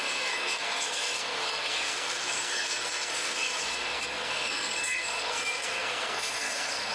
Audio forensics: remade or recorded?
remade